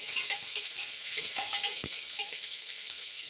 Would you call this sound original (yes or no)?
no